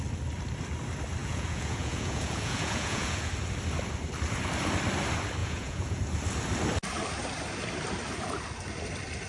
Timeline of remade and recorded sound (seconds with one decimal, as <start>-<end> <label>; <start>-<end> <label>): 0.0-1.2 recorded; 1.2-3.3 remade; 3.3-5.4 recorded; 5.4-6.0 remade; 6.0-9.3 recorded

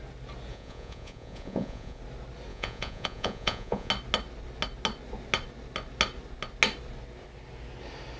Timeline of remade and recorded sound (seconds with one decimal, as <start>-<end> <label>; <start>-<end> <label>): 0.0-0.5 recorded; 0.5-2.0 remade; 2.0-2.5 recorded; 2.5-3.9 remade; 3.9-8.2 recorded

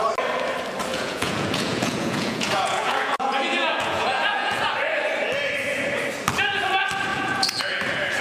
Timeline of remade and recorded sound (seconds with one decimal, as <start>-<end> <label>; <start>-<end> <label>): 0.0-0.9 recorded; 0.9-4.6 remade; 4.6-7.1 recorded; 7.1-7.6 remade; 7.6-8.2 recorded

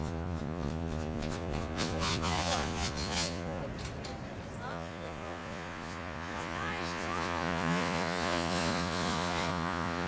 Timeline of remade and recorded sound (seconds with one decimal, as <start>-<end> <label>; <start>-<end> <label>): 0.0-3.6 remade; 3.6-4.7 recorded; 4.7-10.1 remade

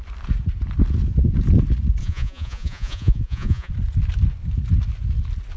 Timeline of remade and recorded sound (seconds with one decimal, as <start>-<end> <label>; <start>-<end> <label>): 0.0-2.0 recorded; 2.0-3.7 remade; 3.7-5.6 recorded

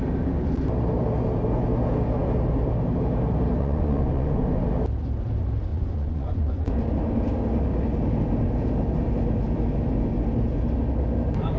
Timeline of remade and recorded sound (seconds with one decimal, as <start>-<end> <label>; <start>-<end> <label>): 0.0-3.6 recorded; 3.6-4.6 remade; 4.6-5.7 recorded; 5.7-6.7 remade; 6.7-11.6 recorded

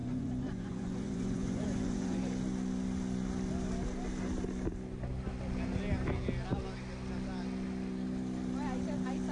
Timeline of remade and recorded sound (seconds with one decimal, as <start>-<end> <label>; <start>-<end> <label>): 0.0-2.2 remade; 2.2-9.3 recorded

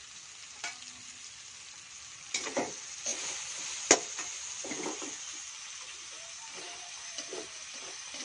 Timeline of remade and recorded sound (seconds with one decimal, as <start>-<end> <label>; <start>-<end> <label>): 0.0-8.2 recorded